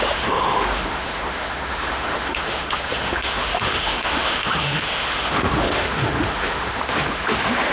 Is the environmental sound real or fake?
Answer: fake